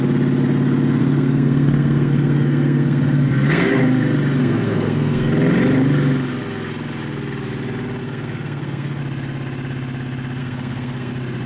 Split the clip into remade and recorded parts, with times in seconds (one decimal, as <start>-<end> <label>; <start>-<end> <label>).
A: 0.0-1.0 recorded; 1.0-3.8 remade; 3.8-4.4 recorded; 4.4-5.3 remade; 5.3-8.0 recorded; 8.0-9.0 remade; 9.0-10.4 recorded; 10.4-11.1 remade; 11.1-11.5 recorded